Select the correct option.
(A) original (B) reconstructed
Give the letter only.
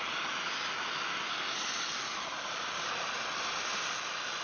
A